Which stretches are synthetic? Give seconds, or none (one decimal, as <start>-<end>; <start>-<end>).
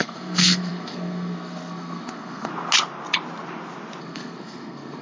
0.0-2.5; 4.0-5.0